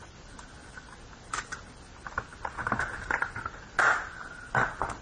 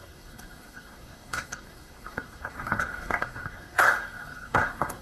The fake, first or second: second